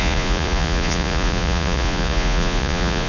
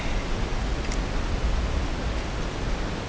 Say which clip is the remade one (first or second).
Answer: first